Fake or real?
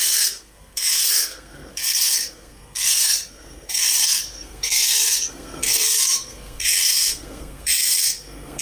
fake